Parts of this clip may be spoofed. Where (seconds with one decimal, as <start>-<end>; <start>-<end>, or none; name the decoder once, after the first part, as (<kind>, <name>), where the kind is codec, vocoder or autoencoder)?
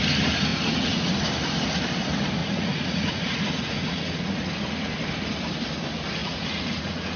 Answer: 0.5-1.2 (vocoder, Vocos); 2.4-4.5; 6.2-7.2